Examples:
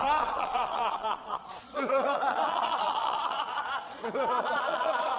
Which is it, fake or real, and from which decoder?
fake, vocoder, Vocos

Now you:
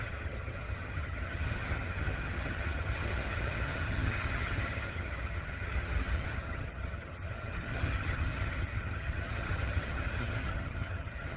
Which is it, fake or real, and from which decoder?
fake, vocoder, HiFi-GAN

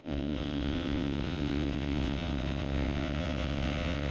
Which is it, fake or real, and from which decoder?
fake, vocoder, WaveNeXt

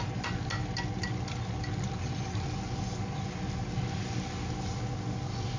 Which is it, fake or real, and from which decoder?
real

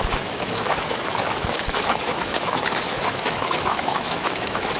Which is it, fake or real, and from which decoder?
fake, autoencoder, DAC-VAE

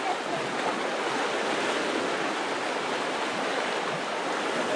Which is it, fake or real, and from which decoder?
real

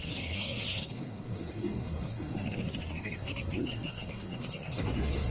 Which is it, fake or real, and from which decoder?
fake, codec, SNAC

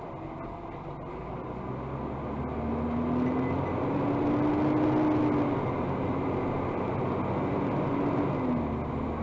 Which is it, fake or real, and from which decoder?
real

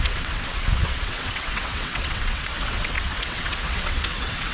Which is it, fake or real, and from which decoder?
fake, vocoder, WaveNeXt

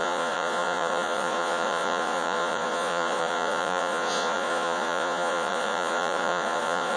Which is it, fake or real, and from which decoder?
fake, vocoder, Vocos